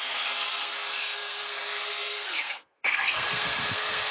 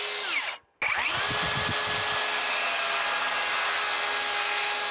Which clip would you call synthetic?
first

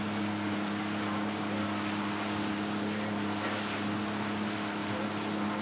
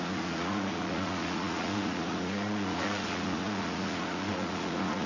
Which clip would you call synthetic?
second